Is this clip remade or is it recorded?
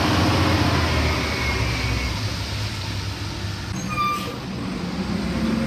recorded